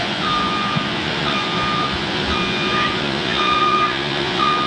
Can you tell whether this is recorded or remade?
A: remade